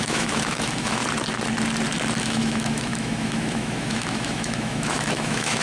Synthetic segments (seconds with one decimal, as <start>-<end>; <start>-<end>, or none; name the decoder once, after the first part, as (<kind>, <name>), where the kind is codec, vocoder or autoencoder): 0.0-1.0 (autoencoder, DAC-VAE); 2.2-5.6